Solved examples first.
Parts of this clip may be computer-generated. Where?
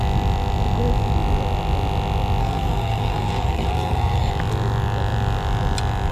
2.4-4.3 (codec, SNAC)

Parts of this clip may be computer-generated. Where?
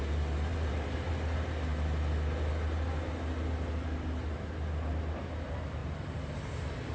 0.5-1.1 (vocoder, BigVGAN v2); 5.8-6.5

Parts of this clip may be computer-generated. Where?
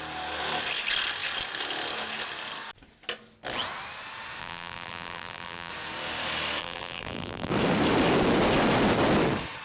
4.4-5.7 (vocoder, BigVGAN v2); 6.6-7.5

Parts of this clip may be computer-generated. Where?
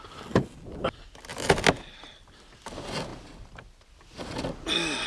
none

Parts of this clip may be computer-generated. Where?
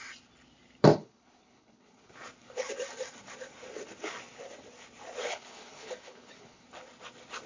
0.9-2.1 (codec, HILCodec); 5.3-6.6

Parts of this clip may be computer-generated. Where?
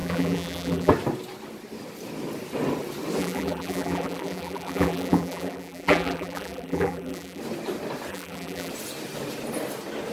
0.0-0.9 (vocoder, BigVGAN v2); 3.2-7.4; 8.1-8.7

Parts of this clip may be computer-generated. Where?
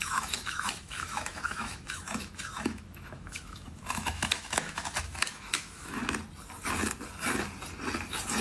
0.0-6.0 (autoencoder, DAC-VAE)